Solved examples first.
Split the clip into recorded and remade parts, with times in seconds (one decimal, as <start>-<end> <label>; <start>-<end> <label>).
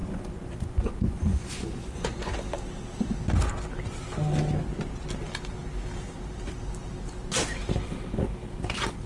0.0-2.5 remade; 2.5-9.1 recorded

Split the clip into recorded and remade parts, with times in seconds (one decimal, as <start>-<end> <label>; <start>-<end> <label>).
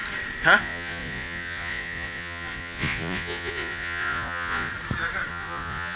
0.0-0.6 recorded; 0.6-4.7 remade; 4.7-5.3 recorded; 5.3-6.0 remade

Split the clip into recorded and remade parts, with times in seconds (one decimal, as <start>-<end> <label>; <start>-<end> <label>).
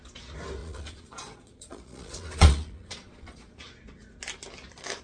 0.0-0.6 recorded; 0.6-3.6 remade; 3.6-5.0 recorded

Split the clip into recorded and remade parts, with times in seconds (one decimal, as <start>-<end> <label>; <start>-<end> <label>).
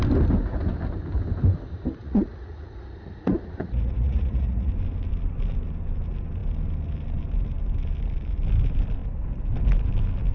0.0-2.0 recorded; 2.0-4.7 remade; 4.7-10.3 recorded